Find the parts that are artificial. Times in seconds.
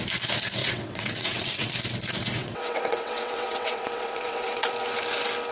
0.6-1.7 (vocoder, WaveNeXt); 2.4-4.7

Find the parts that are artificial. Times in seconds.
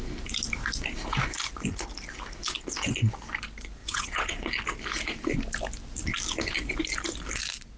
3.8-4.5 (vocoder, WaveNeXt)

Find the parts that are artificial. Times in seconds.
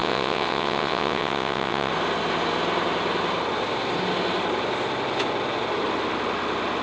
0.0-1.9 (vocoder, WaveNeXt)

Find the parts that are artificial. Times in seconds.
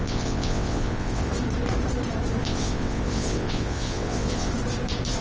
0.0-1.3 (vocoder, WaveNeXt); 2.4-4.5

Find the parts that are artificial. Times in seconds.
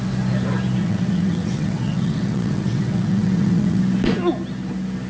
0.8-3.8 (vocoder, WaveNeXt)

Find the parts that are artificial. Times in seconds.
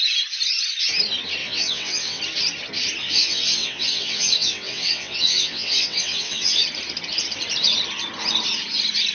1.4-2.2 (vocoder, WaveNeXt); 3.0-6.6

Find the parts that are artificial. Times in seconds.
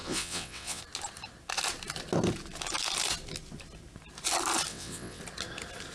0.0-0.8 (vocoder, WaveNeXt); 4.7-5.2